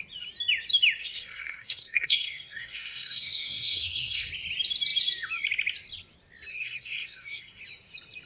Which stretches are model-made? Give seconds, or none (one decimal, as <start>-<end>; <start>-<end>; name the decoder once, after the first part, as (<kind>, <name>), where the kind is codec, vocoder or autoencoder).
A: 1.0-4.3 (codec, SNAC); 6.5-7.6